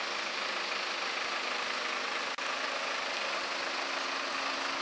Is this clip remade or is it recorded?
recorded